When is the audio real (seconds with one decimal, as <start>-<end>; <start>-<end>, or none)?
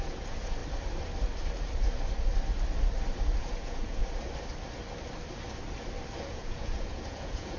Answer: 0.6-3.4; 4.0-6.3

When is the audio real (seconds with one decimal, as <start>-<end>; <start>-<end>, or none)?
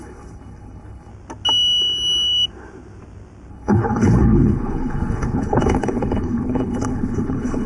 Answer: 1.1-3.5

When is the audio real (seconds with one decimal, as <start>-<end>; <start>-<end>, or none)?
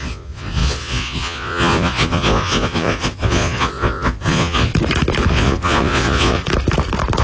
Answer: 4.7-5.3; 6.4-7.2